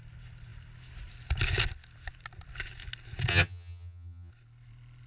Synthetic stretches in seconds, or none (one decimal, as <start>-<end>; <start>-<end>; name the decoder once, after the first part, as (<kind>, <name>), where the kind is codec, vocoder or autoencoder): 3.3-4.3 (vocoder, HiFi-GAN)